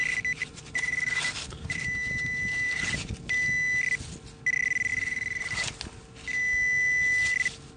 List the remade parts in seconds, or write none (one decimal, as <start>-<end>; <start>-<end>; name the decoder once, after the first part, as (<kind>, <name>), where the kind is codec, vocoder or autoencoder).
0.4-3.1 (vocoder, BigVGAN v2); 4.9-5.7